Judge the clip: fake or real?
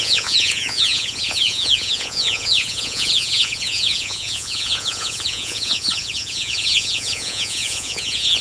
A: fake